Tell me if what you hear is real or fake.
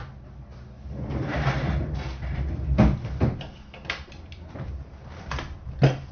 fake